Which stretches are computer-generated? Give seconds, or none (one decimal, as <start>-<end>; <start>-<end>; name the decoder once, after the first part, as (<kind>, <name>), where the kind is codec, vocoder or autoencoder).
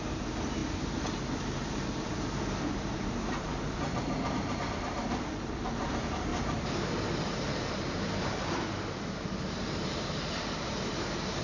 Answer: 0.0-11.4 (vocoder, BigVGAN v2)